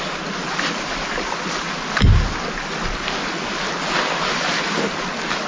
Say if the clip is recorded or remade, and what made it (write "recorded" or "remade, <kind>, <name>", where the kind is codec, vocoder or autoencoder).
recorded